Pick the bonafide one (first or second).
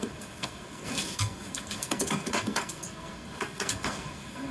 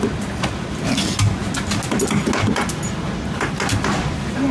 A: second